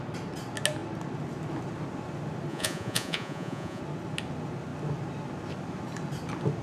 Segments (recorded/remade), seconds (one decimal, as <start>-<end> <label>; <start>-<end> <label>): 0.0-2.5 recorded; 2.5-3.8 remade; 3.8-6.6 recorded

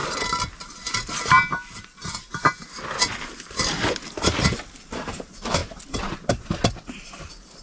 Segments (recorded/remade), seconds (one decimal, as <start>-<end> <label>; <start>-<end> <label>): 0.0-7.6 recorded

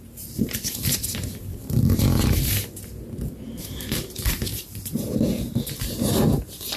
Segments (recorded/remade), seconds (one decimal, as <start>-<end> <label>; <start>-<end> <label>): 0.0-1.6 remade; 1.6-3.6 recorded; 3.6-6.8 remade

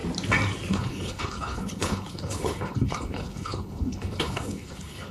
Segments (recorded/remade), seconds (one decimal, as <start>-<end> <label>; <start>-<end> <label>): 0.0-0.7 recorded; 0.7-5.1 remade

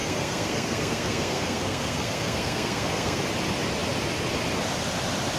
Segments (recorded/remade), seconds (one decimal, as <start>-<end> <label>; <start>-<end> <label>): 0.0-3.2 remade; 3.2-5.4 recorded

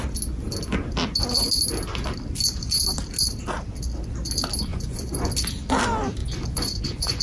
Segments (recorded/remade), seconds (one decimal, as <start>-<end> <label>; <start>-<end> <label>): 0.0-4.7 recorded; 4.7-5.3 remade; 5.3-6.2 recorded; 6.2-7.2 remade